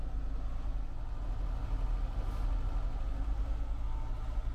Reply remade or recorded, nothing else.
recorded